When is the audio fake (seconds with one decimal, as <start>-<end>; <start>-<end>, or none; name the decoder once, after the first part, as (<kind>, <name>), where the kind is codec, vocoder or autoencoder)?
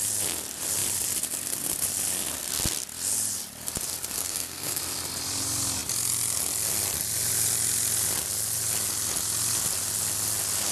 4.2-4.8 (codec, SNAC)